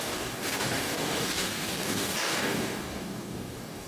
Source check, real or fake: fake